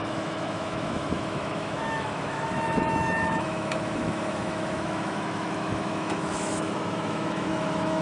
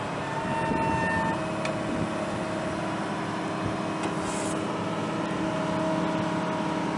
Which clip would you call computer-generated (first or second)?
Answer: first